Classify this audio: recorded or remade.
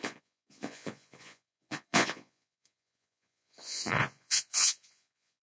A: remade